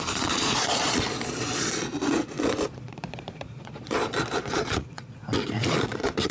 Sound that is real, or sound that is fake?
fake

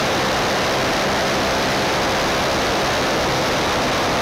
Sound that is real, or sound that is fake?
real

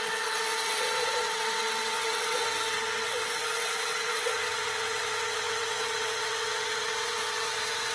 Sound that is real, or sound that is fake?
fake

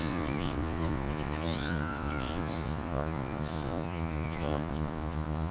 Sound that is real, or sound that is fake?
fake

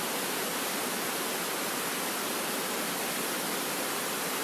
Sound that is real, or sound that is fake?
real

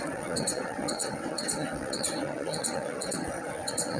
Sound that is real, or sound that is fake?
fake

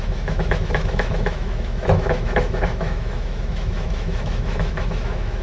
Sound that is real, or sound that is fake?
fake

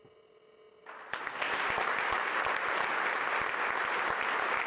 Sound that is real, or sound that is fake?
real